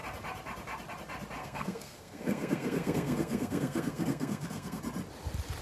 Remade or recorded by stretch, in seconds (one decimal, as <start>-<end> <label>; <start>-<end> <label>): 0.0-1.4 recorded; 1.4-4.8 remade; 4.8-5.6 recorded